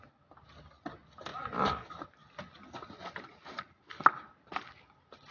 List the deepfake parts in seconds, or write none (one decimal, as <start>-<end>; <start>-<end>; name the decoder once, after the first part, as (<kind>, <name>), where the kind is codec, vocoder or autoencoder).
none